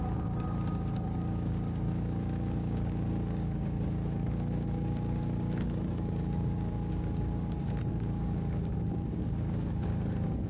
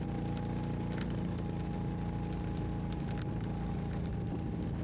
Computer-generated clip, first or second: first